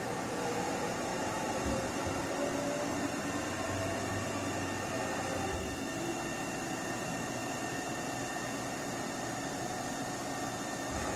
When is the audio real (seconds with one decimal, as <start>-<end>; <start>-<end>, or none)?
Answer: 0.0-1.1; 3.8-7.4; 10.1-11.2